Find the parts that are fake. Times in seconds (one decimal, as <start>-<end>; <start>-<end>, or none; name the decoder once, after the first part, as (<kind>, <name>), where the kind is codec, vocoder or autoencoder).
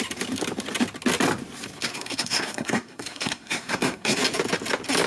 1.8-4.2 (codec, SNAC)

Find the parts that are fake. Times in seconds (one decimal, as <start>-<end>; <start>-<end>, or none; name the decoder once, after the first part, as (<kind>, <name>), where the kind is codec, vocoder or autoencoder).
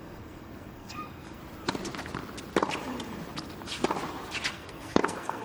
0.0-1.4 (codec, SNAC); 4.5-5.4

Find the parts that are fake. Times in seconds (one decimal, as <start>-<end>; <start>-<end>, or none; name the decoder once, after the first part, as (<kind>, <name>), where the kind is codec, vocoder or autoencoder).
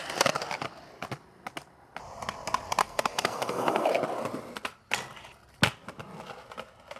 2.8-3.9 (codec, SNAC)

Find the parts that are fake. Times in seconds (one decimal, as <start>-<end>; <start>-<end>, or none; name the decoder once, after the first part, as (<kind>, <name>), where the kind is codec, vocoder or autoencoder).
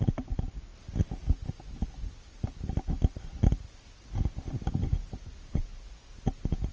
none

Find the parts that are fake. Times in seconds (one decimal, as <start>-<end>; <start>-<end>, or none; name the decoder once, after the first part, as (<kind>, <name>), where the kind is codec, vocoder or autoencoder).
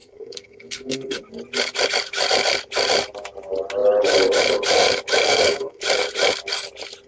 0.0-1.3 (codec, SNAC); 5.2-5.8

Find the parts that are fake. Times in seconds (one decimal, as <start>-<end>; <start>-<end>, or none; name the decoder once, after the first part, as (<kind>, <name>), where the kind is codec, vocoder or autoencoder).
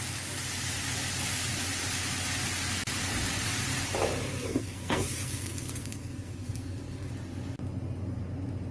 4.3-7.1 (codec, SNAC)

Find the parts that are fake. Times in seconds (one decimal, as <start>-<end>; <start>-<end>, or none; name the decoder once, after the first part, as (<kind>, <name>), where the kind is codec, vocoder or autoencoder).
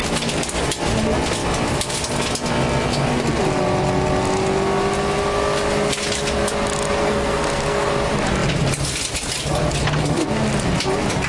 7.0-7.9 (codec, SNAC)